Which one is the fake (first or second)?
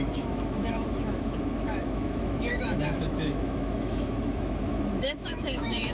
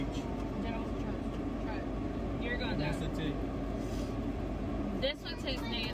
first